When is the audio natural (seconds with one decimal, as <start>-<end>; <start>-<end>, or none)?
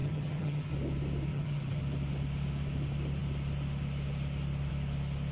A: 0.7-1.3; 1.8-5.3